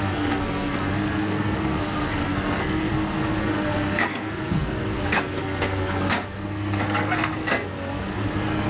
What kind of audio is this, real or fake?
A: fake